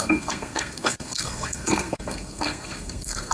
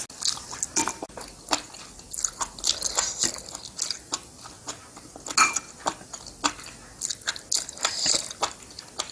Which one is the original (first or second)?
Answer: second